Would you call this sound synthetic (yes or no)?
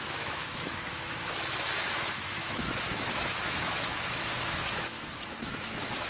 yes